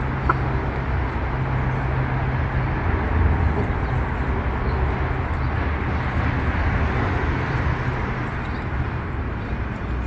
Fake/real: real